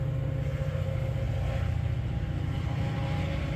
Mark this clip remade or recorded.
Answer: recorded